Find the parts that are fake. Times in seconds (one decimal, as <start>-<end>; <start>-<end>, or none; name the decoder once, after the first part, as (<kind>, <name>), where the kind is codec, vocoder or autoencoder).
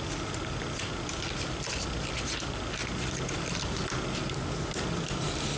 none